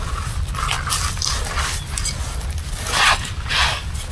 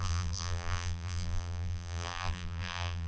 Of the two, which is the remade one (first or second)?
second